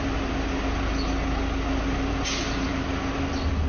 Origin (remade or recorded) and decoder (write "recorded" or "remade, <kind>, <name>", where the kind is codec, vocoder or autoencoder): recorded